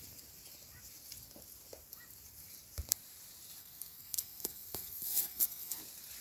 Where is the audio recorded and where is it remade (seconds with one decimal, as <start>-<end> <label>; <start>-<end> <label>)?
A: 0.0-3.6 recorded; 3.6-5.8 remade; 5.8-6.2 recorded